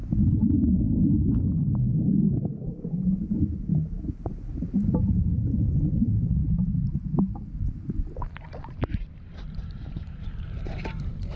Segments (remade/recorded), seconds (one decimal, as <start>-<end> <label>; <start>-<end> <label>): 0.0-2.8 recorded; 2.8-6.4 remade; 6.4-9.4 recorded; 9.4-11.4 remade